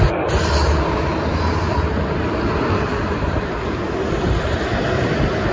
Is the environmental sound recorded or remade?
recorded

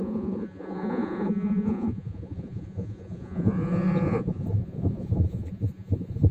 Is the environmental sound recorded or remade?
remade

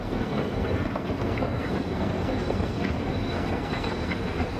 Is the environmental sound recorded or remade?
remade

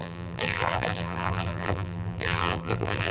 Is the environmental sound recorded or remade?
remade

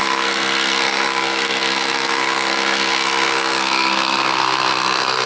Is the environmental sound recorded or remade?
remade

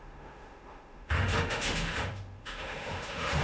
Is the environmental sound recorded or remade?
remade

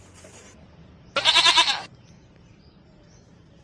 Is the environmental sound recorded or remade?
remade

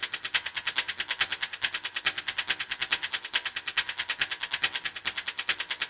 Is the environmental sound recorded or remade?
recorded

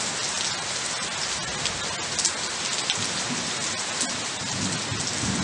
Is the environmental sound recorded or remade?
recorded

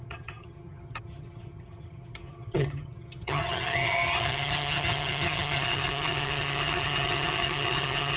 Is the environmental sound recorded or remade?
remade